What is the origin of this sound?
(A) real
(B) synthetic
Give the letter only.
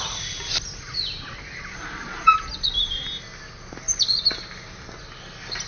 A